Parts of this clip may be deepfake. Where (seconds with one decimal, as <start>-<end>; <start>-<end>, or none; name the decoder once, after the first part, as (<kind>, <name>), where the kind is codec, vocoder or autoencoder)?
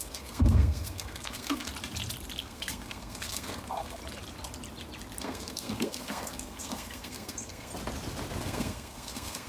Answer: 0.0-1.7 (codec, SNAC); 2.4-4.0; 5.2-7.7; 8.4-9.5